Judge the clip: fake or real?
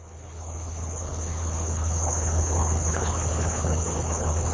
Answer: fake